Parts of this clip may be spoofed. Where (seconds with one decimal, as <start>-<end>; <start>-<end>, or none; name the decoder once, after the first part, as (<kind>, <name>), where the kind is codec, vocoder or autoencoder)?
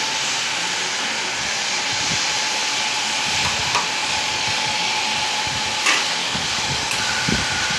4.0-5.0 (codec, DAC); 6.2-7.0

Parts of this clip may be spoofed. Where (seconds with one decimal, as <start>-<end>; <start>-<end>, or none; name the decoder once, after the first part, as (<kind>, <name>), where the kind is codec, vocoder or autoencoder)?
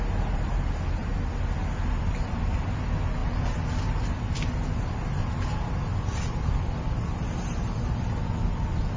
none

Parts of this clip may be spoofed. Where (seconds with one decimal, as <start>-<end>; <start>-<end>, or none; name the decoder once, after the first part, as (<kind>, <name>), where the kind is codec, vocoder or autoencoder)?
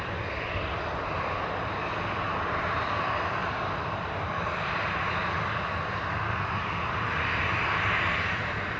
none